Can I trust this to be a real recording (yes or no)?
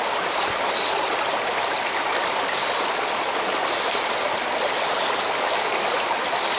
yes